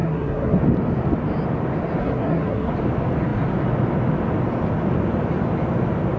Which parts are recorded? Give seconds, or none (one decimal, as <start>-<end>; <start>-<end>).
0.6-2.0; 2.7-6.2